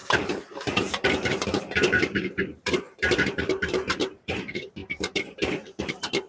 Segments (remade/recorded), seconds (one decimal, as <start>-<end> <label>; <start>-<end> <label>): 0.0-6.3 remade